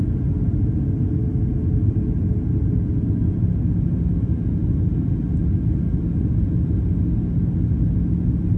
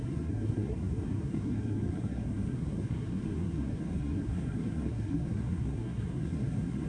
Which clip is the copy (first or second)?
second